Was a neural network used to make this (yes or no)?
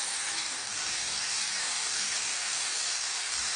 yes